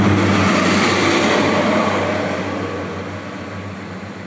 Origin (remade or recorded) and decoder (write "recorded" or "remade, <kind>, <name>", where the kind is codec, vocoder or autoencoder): recorded